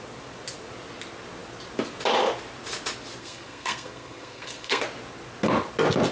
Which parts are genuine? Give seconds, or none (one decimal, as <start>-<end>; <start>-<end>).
0.0-3.2; 4.8-6.1